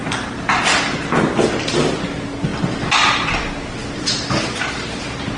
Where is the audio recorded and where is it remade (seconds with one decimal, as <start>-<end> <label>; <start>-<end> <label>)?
0.0-5.4 recorded